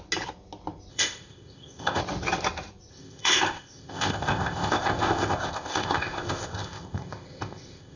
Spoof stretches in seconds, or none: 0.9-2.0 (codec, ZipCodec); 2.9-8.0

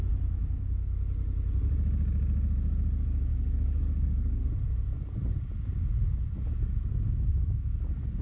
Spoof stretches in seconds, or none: 3.3-4.4 (codec, DAC)